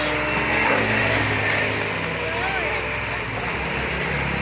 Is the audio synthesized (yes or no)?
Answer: no